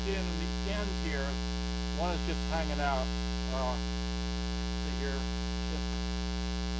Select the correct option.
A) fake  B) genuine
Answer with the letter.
B